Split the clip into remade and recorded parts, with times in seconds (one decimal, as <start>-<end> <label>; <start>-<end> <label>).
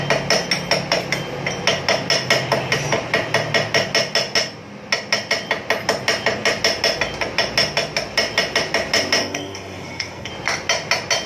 0.0-9.2 recorded; 9.2-10.3 remade; 10.3-11.3 recorded